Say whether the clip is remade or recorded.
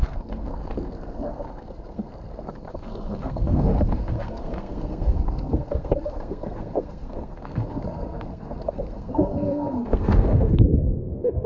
remade